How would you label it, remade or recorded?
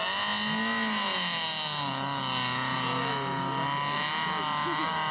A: recorded